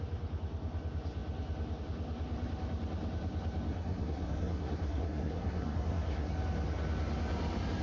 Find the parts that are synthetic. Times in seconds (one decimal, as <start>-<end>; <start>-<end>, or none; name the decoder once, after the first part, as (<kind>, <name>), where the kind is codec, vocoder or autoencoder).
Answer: 3.7-6.3 (codec, SNAC)